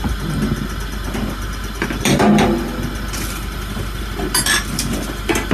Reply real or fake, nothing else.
real